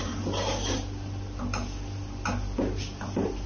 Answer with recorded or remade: recorded